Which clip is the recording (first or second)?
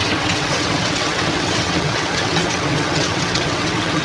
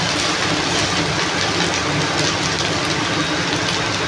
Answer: second